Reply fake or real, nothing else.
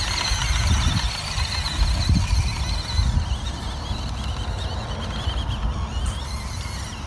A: real